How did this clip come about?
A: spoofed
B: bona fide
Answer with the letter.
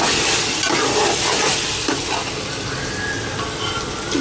B